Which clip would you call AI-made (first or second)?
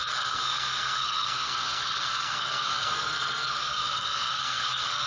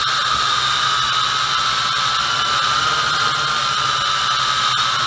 first